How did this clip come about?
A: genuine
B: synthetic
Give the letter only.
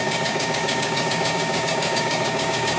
B